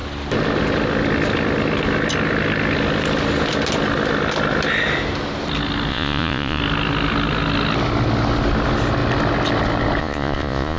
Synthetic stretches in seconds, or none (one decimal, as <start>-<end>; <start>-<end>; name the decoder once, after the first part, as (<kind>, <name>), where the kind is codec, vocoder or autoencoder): 5.9-6.6 (vocoder, Vocos); 10.0-10.8